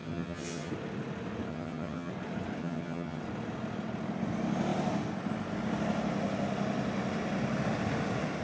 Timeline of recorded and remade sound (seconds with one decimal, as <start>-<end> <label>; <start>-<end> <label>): 0.0-0.7 remade; 0.7-1.5 recorded; 1.5-2.1 remade; 2.1-2.6 recorded; 2.6-3.2 remade; 3.2-8.4 recorded